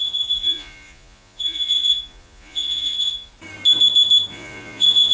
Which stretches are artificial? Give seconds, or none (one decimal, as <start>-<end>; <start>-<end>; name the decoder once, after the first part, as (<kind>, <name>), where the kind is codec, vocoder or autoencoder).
0.0-3.3 (vocoder, Vocos); 4.3-5.1

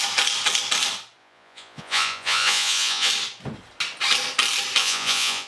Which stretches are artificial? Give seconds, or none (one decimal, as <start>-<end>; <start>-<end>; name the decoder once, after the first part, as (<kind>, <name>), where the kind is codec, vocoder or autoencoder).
1.2-3.1 (vocoder, Vocos); 4.8-5.5

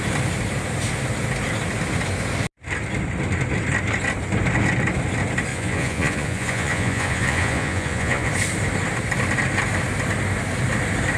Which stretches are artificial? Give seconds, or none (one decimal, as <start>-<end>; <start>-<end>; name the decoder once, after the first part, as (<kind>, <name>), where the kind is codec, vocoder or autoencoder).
5.5-8.3 (vocoder, Vocos)

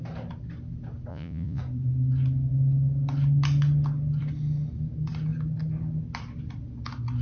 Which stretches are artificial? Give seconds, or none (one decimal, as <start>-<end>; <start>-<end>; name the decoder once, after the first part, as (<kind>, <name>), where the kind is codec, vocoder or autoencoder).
1.1-1.6 (vocoder, Vocos)

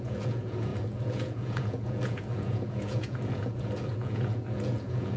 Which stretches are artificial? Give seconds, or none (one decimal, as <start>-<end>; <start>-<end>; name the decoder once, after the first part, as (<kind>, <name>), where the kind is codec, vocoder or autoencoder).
0.0-5.2 (vocoder, Vocos)

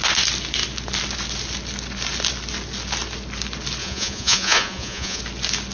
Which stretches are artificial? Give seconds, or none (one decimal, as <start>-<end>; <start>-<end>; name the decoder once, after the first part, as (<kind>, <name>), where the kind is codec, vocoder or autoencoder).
3.8-5.2 (vocoder, Vocos)

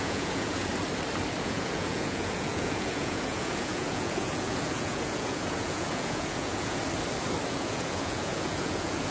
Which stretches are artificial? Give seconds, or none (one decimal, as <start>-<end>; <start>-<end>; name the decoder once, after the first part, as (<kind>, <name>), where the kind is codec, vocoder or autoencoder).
0.0-0.7 (vocoder, Vocos); 1.4-6.8; 7.5-9.1